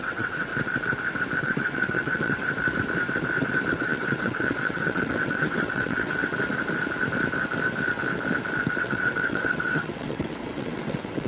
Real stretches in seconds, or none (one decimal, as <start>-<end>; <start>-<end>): 0.5-1.4; 2.4-3.7; 6.2-8.8